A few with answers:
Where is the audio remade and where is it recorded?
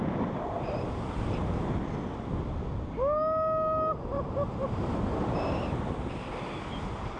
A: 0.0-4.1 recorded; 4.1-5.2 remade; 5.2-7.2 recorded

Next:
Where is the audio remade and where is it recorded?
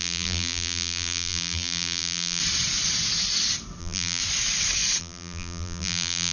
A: 0.0-2.4 remade; 2.4-3.8 recorded; 3.8-4.2 remade; 4.2-5.0 recorded; 5.0-6.3 remade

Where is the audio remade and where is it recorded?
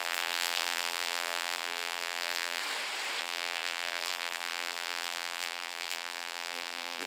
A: 0.0-2.6 remade; 2.6-3.2 recorded; 3.2-7.1 remade